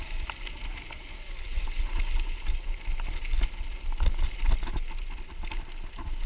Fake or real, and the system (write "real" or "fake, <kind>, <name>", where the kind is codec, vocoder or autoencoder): real